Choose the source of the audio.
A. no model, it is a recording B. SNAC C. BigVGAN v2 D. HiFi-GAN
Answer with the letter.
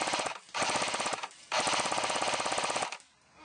A